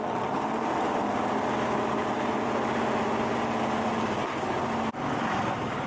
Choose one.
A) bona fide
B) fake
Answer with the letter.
A